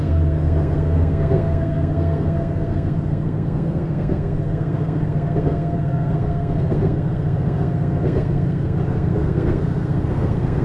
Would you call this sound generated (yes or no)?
yes